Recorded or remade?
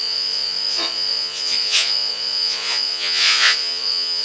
remade